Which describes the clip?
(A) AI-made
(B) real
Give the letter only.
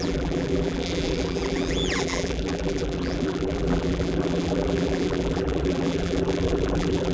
A